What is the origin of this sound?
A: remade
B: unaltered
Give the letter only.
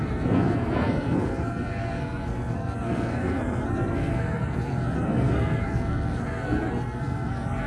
A